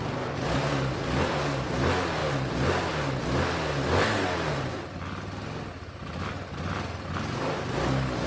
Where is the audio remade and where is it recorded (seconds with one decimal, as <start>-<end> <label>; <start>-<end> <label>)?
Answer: 0.0-8.3 recorded